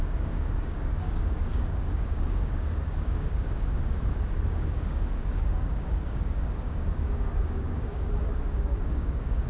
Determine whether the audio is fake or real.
fake